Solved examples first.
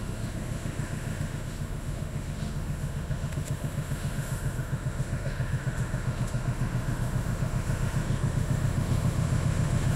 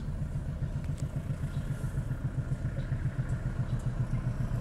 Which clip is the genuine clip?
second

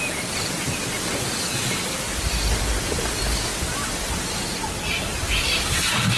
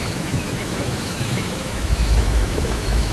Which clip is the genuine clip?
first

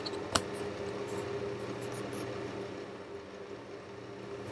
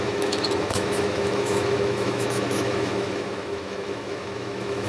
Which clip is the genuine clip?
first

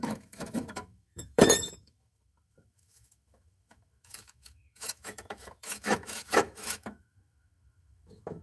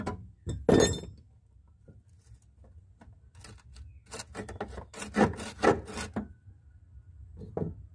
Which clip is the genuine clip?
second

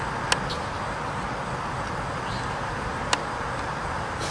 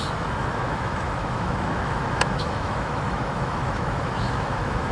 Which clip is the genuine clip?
first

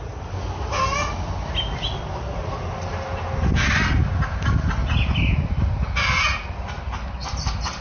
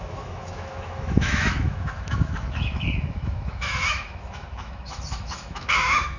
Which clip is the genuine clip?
first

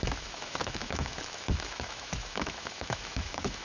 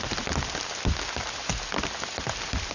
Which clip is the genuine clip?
second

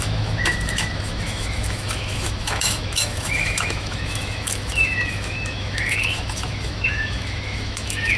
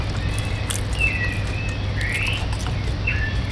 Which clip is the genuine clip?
second